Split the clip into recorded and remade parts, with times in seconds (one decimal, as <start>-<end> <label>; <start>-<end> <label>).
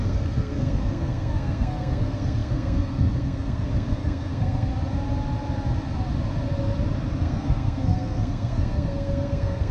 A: 0.0-4.7 remade; 4.7-7.2 recorded; 7.2-9.7 remade